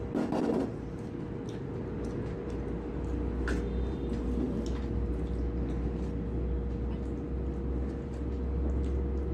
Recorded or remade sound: recorded